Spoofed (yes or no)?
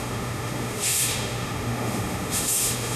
yes